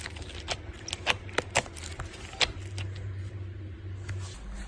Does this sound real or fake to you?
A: real